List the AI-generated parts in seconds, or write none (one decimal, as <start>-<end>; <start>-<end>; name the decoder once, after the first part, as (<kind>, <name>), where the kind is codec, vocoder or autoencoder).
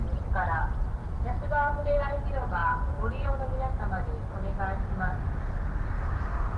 1.0-1.7 (autoencoder, DAC-VAE)